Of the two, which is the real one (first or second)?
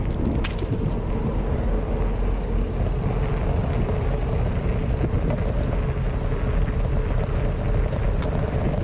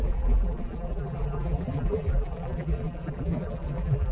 first